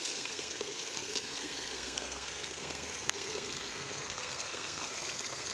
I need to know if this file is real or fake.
fake